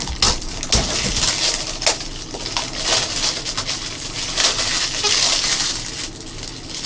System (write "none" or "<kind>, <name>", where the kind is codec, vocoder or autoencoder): none